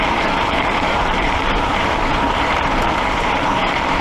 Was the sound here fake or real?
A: fake